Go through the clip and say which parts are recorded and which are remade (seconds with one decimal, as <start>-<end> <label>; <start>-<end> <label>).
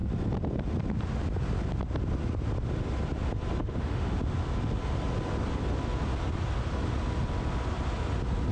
0.0-3.6 recorded; 3.6-4.1 remade; 4.1-8.5 recorded